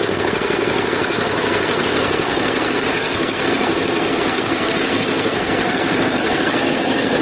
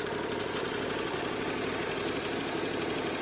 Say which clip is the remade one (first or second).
first